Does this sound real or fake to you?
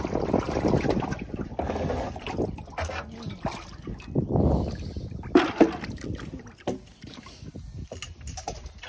real